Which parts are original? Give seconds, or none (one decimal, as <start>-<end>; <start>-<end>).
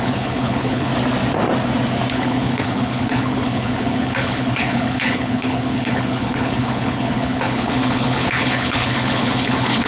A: 0.9-2.1